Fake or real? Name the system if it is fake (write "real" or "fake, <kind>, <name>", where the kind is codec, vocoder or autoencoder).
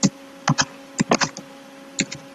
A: real